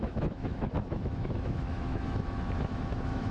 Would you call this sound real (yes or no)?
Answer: no